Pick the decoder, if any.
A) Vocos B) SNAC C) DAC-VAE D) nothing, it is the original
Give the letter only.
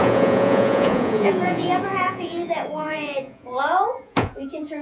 A